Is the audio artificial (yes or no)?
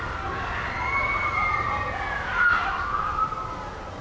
no